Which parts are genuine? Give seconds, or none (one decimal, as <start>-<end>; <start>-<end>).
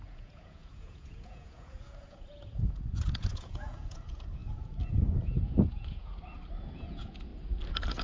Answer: 6.1-6.7; 7.3-8.0